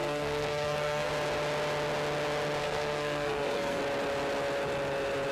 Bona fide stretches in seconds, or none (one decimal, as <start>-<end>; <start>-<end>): 1.1-2.6; 3.8-5.3